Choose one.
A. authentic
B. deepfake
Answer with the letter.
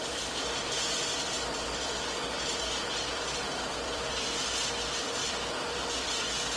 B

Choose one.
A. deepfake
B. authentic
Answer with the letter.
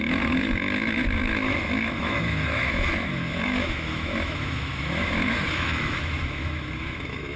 A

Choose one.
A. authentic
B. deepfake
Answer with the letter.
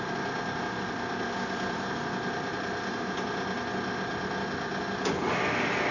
A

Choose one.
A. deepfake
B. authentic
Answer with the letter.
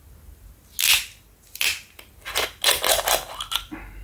B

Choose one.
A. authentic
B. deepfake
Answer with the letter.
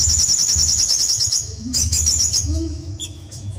B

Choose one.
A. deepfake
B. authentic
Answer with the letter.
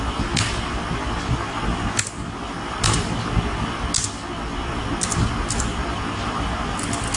B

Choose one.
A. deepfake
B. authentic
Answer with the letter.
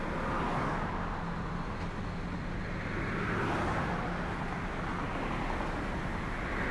B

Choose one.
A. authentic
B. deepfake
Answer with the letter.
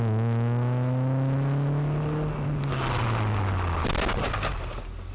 A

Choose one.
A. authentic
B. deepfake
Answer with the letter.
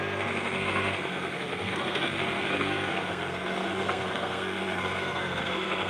B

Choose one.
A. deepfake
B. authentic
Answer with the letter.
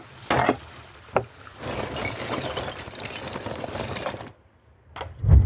B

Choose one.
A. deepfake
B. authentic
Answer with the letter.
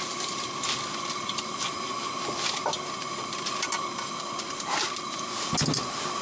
B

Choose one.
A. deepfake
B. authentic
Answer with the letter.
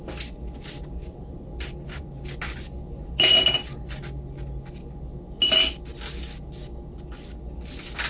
B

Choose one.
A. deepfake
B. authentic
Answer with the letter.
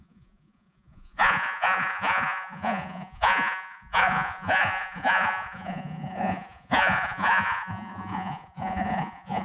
A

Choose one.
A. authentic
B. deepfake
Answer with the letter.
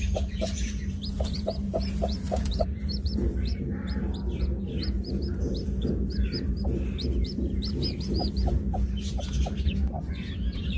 B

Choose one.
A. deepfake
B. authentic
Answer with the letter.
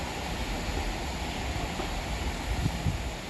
B